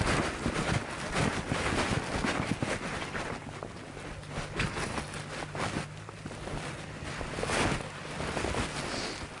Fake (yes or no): no